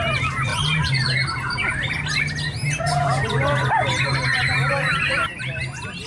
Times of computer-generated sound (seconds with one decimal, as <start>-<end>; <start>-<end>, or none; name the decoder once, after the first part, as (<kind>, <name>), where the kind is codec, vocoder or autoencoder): none